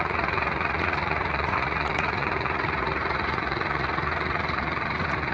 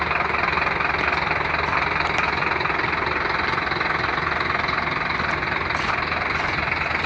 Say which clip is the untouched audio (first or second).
second